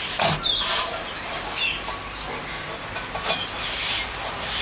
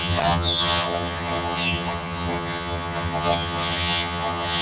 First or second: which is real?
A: first